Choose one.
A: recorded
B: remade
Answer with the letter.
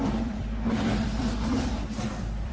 B